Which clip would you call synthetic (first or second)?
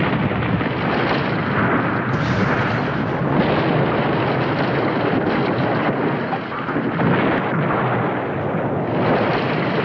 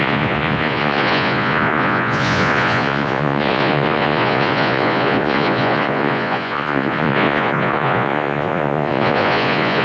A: second